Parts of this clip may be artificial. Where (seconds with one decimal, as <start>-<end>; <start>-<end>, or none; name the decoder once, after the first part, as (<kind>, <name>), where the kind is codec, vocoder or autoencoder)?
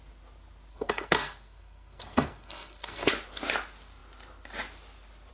0.7-3.1 (codec, SNAC)